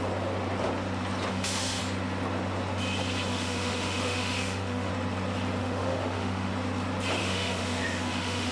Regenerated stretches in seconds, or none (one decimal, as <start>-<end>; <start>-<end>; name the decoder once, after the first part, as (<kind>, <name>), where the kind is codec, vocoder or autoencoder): 1.3-1.8 (autoencoder, DAC-VAE); 3.3-4.9; 5.6-6.5; 7.2-8.5